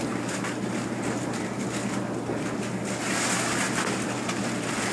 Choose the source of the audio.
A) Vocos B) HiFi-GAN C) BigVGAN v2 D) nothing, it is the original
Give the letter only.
D